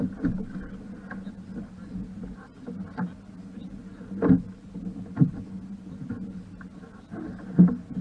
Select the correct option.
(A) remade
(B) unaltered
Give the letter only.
B